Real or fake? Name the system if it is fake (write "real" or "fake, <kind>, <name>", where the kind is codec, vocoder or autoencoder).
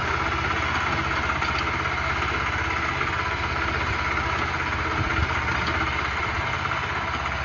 real